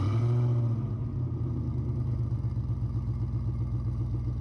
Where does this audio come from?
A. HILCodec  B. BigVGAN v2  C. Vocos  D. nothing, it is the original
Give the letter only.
D